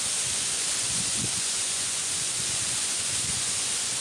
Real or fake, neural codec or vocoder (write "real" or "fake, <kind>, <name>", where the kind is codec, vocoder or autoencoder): fake, vocoder, Vocos